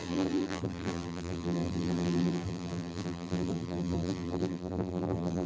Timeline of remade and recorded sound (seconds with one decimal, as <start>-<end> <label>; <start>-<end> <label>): 0.0-5.5 remade